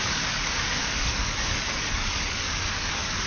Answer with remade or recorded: remade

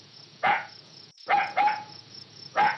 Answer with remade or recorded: remade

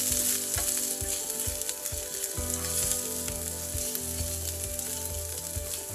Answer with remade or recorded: recorded